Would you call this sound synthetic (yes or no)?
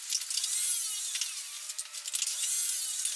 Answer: no